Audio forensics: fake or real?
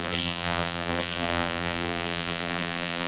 fake